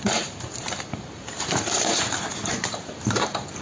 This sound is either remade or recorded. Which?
remade